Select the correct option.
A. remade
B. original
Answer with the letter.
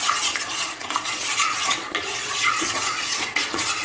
A